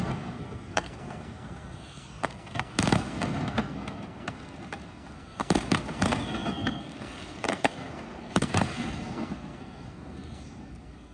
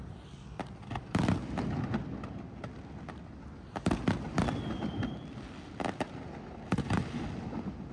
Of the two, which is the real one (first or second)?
second